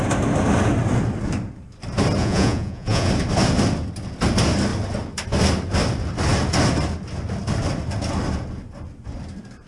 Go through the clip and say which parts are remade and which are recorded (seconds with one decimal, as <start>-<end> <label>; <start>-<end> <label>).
0.0-2.2 recorded; 2.2-3.1 remade; 3.1-9.7 recorded